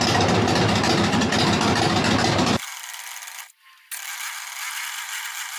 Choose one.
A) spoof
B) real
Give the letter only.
B